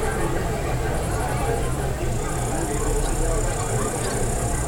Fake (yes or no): no